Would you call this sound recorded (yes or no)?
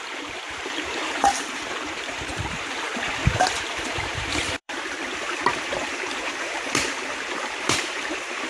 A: no